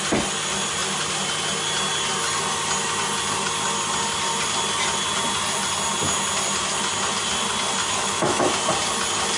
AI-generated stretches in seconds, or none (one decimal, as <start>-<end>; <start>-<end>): 7.8-8.5